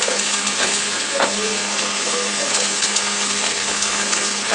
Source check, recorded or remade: remade